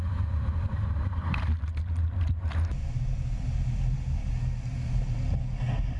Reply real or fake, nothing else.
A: real